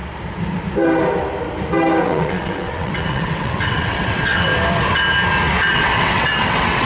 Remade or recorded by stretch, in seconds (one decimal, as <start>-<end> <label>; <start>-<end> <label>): 0.0-2.0 recorded; 2.0-4.5 remade; 4.5-5.7 recorded; 5.7-6.9 remade